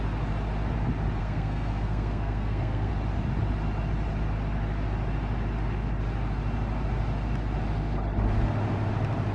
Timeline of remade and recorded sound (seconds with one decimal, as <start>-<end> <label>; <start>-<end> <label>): 0.0-1.2 recorded; 1.2-2.9 remade; 2.9-9.3 recorded